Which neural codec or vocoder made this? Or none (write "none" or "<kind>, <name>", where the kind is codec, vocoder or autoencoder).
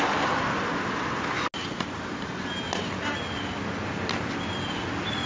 none